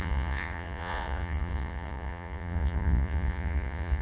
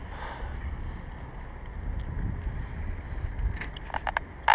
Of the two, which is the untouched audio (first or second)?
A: second